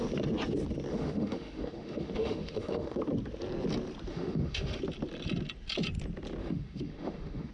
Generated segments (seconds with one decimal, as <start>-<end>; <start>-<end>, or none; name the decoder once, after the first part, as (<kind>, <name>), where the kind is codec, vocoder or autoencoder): 0.9-3.0 (autoencoder, DAC-VAE); 4.1-4.8; 6.4-7.5